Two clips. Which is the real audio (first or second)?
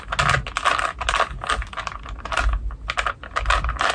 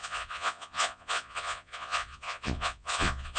first